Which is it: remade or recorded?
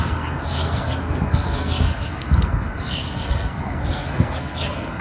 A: remade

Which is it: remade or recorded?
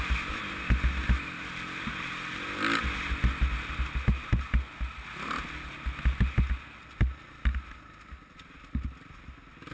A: recorded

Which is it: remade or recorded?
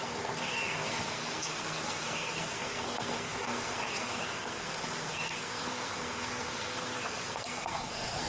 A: remade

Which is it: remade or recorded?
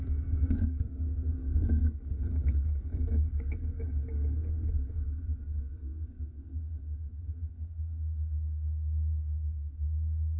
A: remade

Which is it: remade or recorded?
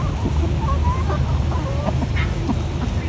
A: recorded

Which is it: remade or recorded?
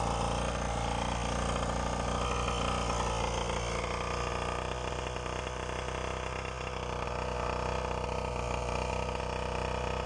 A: recorded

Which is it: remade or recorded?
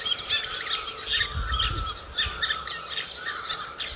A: recorded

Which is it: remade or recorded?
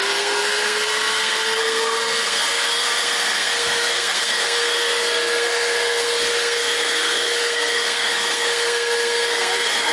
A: remade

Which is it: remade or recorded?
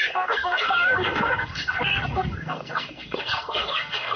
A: remade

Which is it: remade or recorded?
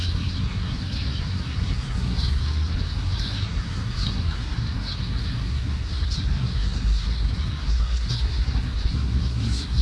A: remade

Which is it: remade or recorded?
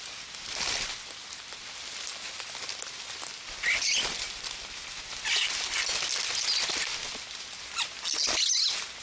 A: recorded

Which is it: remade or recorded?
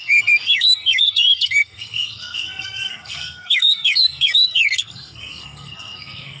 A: remade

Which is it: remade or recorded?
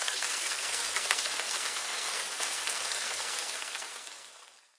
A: remade